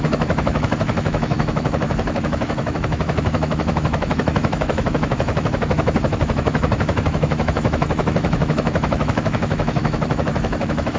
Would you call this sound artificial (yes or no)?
yes